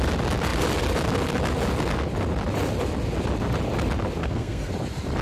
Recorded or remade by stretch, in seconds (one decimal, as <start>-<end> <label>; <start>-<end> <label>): 0.0-4.2 recorded; 4.2-4.7 remade; 4.7-5.2 recorded